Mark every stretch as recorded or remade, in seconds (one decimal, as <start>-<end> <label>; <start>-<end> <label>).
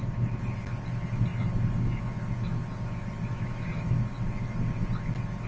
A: 0.0-3.3 recorded; 3.3-3.9 remade; 3.9-5.5 recorded